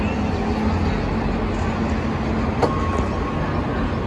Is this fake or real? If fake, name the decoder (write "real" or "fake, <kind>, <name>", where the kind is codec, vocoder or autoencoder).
real